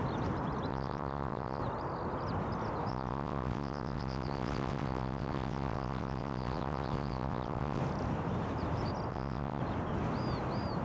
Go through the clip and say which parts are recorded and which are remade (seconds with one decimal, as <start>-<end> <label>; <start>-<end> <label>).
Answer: 0.0-0.7 recorded; 0.7-1.6 remade; 1.6-2.9 recorded; 2.9-7.8 remade; 7.8-9.1 recorded; 9.1-9.6 remade; 9.6-10.8 recorded